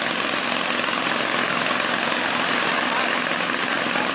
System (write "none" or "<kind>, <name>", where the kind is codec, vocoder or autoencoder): none